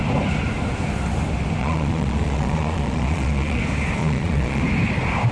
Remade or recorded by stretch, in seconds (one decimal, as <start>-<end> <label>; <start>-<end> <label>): 0.0-1.6 recorded; 1.6-3.6 remade; 3.6-4.0 recorded; 4.0-4.6 remade; 4.6-5.3 recorded

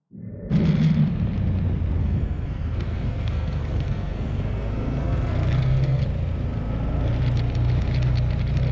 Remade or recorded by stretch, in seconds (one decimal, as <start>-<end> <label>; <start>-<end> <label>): 0.0-2.0 recorded; 2.0-6.0 remade; 6.0-8.7 recorded